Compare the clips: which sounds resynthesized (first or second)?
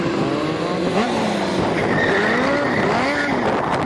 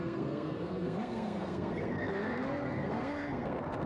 second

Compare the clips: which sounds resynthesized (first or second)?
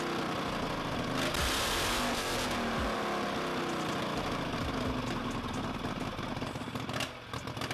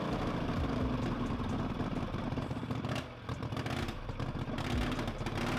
second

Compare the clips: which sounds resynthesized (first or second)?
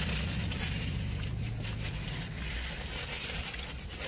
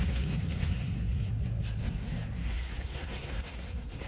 second